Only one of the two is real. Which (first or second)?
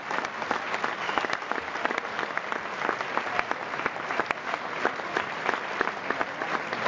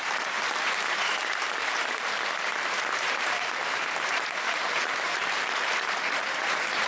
first